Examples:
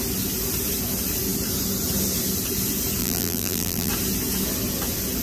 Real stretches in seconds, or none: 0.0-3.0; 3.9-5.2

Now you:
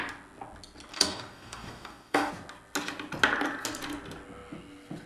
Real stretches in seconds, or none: 0.0-0.9; 2.3-5.1